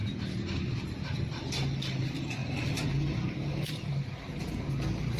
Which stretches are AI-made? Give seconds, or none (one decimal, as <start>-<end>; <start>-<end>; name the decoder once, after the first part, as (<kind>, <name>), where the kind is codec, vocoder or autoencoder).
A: 0.0-1.5 (vocoder, BigVGAN v2); 3.9-4.7